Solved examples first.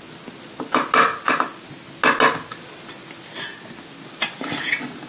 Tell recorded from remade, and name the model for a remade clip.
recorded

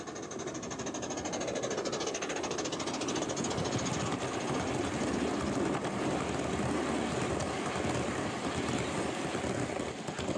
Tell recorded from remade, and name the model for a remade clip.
recorded